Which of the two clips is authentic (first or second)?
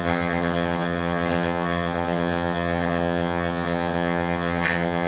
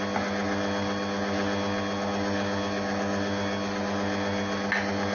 second